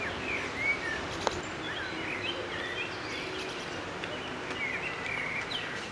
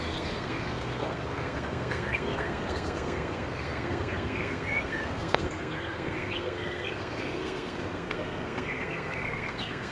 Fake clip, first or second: second